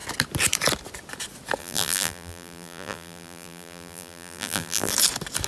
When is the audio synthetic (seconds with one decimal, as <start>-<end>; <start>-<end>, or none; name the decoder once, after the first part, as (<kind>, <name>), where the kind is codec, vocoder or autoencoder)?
1.6-4.9 (vocoder, BigVGAN v2)